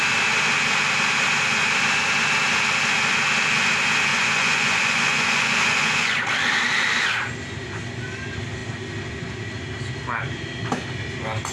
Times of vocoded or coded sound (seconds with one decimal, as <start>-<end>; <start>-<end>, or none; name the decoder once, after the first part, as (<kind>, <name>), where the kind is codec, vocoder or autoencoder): 4.1-6.2 (vocoder, Vocos)